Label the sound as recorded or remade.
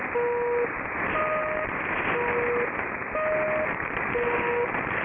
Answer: recorded